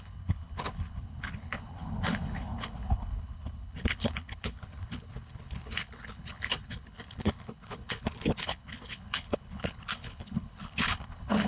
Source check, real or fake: fake